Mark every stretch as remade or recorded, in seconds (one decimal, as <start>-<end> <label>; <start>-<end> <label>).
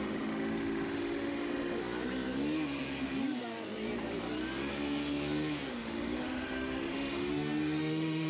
0.0-1.8 remade; 1.8-5.7 recorded; 5.7-8.3 remade